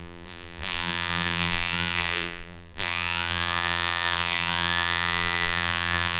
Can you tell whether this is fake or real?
fake